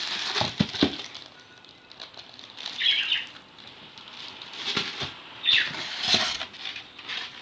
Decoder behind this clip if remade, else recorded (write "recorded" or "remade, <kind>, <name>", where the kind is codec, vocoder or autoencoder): recorded